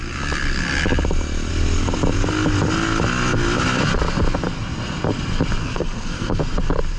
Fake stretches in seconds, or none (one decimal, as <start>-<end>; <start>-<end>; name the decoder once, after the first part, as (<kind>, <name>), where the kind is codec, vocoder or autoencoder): 5.6-6.4 (codec, SNAC)